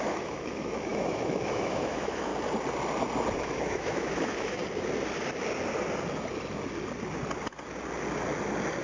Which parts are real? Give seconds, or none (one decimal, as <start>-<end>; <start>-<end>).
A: 2.3-3.4; 4.6-8.8